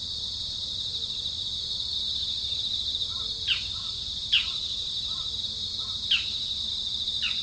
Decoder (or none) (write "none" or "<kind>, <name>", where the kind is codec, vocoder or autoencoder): none